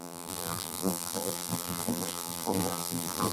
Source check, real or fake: fake